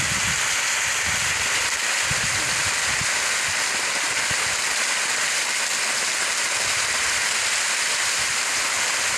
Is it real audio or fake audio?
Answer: real